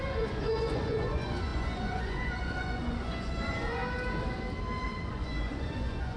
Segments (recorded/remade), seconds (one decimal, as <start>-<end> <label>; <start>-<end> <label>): 0.0-3.8 remade; 3.8-5.1 recorded; 5.1-6.2 remade